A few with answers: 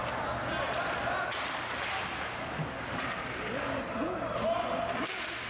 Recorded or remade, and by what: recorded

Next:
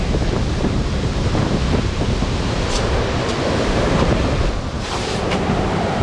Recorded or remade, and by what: remade, vocoder, BigVGAN v2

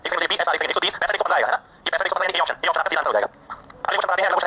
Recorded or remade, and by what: remade, vocoder, BigVGAN v2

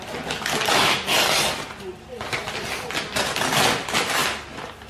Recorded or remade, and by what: recorded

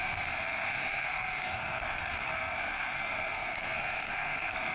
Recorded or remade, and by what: remade, codec, SNAC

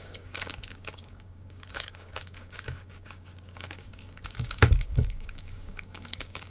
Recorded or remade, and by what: remade, codec, DAC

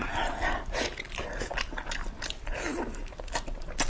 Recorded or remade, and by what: recorded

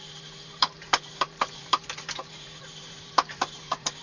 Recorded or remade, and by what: remade, vocoder, BigVGAN v2